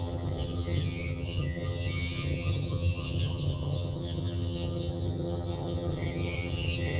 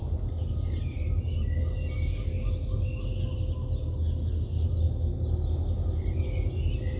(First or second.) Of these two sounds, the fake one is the first